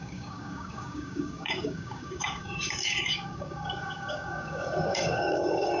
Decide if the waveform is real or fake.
fake